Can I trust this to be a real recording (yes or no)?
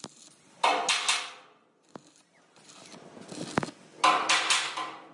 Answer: yes